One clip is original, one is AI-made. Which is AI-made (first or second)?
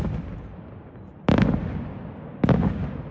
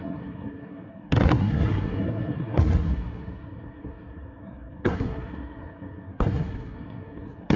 second